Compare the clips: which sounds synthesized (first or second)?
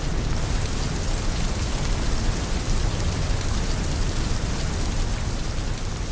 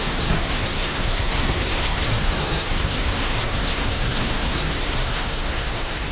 second